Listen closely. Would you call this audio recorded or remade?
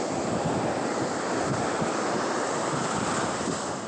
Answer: recorded